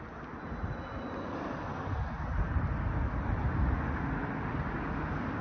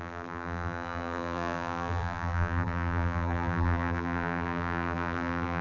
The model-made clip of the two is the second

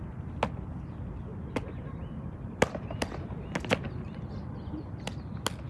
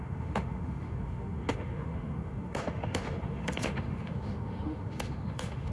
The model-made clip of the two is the second